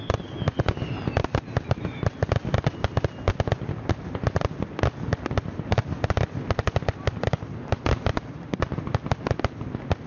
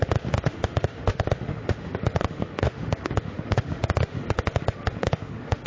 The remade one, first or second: second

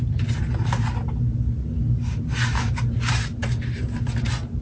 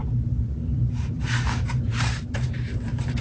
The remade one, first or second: second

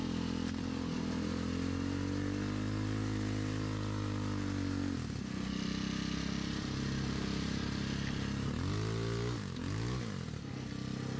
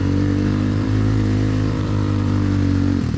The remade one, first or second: second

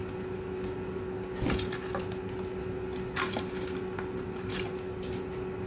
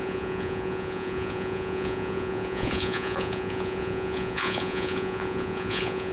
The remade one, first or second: second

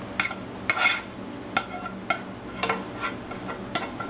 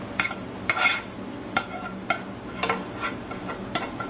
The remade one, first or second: second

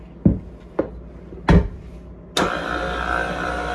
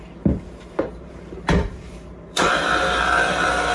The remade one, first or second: second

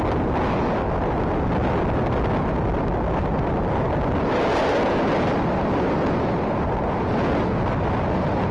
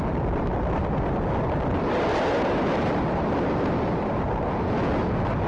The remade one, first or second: second